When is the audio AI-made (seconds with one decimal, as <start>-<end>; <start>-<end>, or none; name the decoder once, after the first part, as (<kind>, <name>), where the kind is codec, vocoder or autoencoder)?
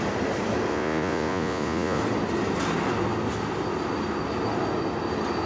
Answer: 0.7-2.0 (vocoder, Vocos)